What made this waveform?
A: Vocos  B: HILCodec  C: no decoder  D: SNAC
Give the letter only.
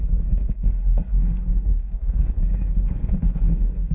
D